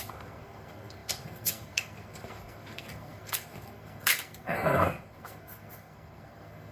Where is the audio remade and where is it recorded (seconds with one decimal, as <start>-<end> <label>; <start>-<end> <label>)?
0.0-6.7 remade